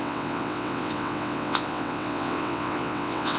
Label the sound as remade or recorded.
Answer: remade